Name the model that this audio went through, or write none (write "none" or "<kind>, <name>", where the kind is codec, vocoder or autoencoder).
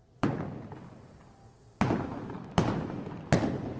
none